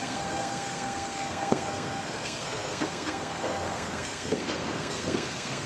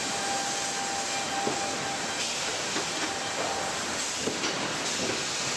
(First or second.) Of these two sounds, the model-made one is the first